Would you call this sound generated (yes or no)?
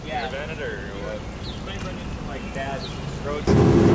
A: no